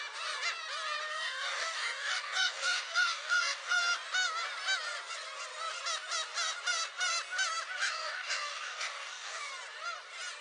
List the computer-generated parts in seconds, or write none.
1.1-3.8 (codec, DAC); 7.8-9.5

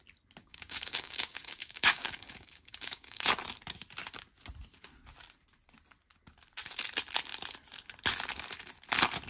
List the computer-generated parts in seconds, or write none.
0.4-3.3 (codec, DAC)

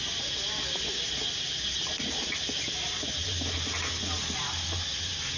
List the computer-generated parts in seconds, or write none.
none

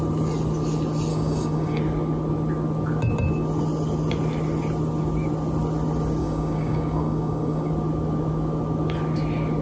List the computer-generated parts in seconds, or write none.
1.1-1.8 (codec, DAC); 6.2-7.7

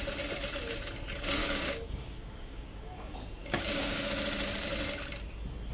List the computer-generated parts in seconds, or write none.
1.4-2.8 (codec, DAC); 3.4-4.1

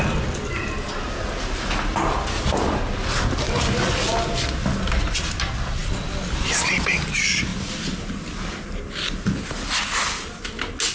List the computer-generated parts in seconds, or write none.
none